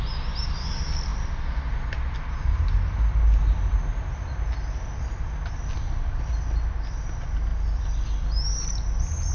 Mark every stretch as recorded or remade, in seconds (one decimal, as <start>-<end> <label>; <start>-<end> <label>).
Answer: 0.0-7.5 recorded; 7.5-8.2 remade; 8.2-9.3 recorded